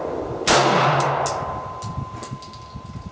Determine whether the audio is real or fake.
real